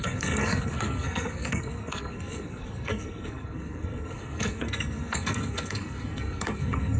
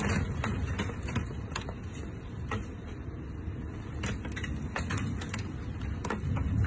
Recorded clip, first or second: second